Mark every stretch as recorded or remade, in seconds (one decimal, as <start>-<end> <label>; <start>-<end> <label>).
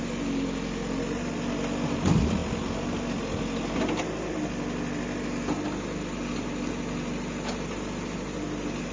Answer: 0.0-8.9 recorded